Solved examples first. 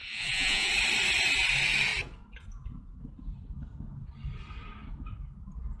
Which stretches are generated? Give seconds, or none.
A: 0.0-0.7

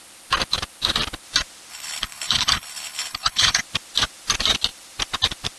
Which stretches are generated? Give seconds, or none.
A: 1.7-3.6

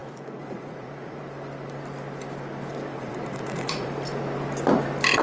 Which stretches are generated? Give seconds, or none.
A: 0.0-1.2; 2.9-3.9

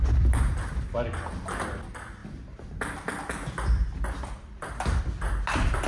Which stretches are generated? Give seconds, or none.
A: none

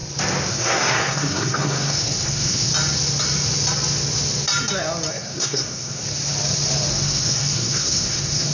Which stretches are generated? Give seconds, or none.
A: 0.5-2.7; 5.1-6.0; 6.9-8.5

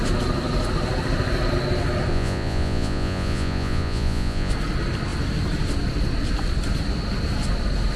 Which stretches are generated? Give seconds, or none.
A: 2.1-4.5